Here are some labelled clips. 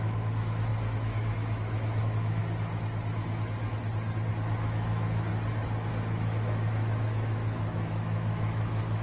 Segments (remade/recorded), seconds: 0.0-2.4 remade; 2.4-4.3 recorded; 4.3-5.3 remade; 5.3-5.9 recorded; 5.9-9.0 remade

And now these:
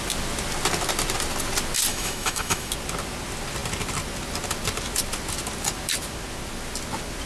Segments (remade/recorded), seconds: 0.0-1.9 recorded; 1.9-2.7 remade; 2.7-7.3 recorded

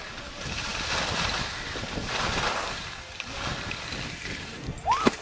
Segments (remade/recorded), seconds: 0.0-5.2 recorded

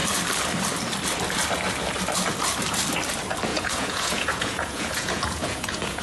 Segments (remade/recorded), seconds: 0.0-3.5 recorded; 3.5-6.0 remade

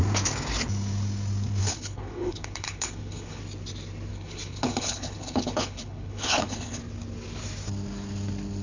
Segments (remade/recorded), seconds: 0.0-1.6 recorded; 1.6-3.4 remade; 3.4-4.1 recorded; 4.1-6.8 remade; 6.8-8.6 recorded